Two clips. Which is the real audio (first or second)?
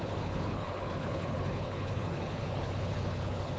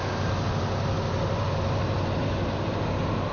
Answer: second